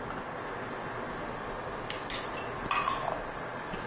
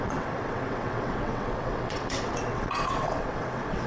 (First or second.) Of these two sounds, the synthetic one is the second